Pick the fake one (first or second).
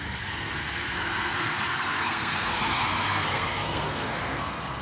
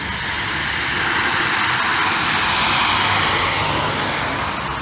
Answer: first